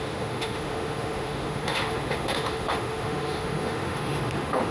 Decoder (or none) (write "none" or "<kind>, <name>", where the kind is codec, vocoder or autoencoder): autoencoder, DAC-VAE